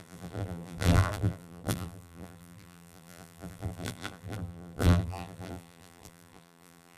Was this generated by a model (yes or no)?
yes